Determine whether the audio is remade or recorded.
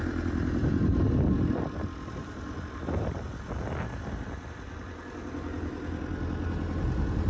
recorded